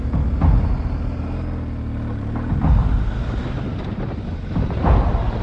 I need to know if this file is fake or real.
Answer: real